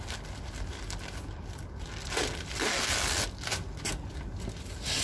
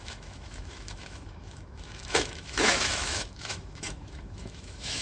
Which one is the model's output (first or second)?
second